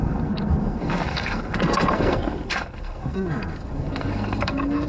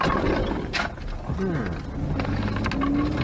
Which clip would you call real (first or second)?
second